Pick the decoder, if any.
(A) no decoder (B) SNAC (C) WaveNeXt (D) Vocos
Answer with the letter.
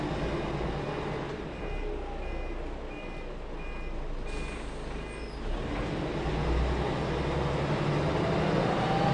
A